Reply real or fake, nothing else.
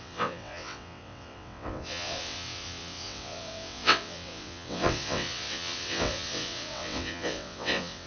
fake